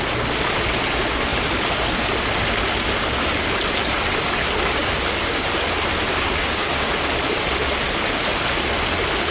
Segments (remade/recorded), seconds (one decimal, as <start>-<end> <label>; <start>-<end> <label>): 0.0-4.8 recorded; 4.8-5.5 remade; 5.5-6.1 recorded; 6.1-6.9 remade; 6.9-9.3 recorded